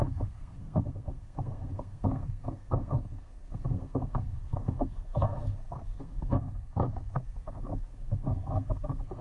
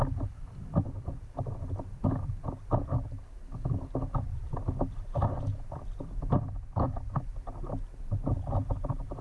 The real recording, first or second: second